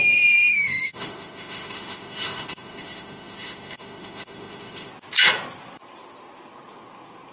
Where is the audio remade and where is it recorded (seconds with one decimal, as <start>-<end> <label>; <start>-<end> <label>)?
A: 0.0-0.5 recorded; 0.5-4.9 remade; 4.9-7.3 recorded